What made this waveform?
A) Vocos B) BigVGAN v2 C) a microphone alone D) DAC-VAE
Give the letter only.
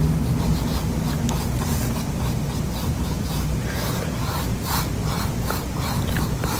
C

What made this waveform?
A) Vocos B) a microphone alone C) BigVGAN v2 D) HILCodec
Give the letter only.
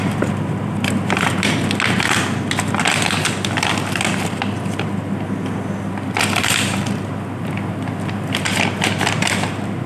B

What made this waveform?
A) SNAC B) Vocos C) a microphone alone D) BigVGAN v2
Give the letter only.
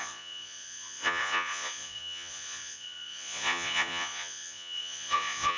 B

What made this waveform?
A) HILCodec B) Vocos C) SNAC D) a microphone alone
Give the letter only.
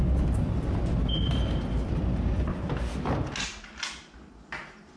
D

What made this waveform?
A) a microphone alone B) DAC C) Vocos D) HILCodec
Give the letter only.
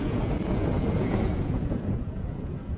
C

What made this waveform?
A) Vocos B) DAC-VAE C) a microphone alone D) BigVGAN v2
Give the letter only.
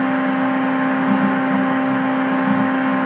C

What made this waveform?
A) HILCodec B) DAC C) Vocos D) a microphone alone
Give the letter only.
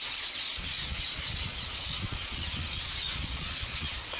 C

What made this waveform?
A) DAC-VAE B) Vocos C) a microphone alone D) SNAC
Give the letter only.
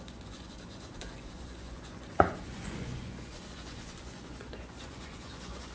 B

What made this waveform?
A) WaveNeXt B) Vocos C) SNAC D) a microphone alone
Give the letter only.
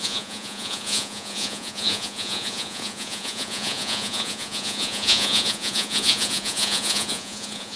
B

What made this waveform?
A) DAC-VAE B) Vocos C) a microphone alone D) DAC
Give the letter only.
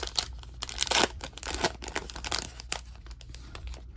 C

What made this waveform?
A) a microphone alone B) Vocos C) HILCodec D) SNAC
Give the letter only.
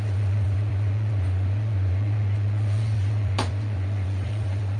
B